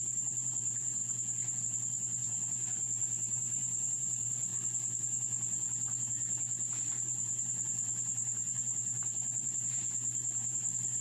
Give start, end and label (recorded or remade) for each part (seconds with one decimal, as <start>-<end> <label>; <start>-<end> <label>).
0.0-1.0 remade; 1.0-1.6 recorded; 1.6-4.5 remade; 4.5-6.7 recorded; 6.7-11.0 remade